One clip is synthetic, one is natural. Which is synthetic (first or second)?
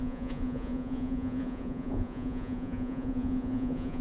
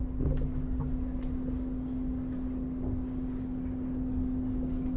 first